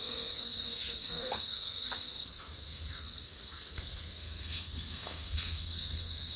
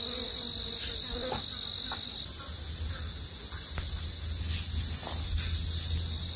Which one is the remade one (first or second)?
first